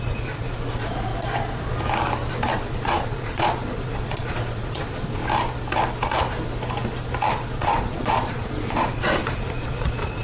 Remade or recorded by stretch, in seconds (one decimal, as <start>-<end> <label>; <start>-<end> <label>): 0.0-1.1 remade; 1.1-2.5 recorded; 2.5-5.2 remade; 5.2-7.3 recorded; 7.3-10.2 remade